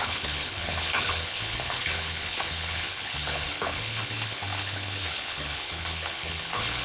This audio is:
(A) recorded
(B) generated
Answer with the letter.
B